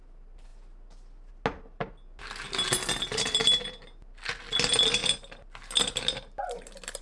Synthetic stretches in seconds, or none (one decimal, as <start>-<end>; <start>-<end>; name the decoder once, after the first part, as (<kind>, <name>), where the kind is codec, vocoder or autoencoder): none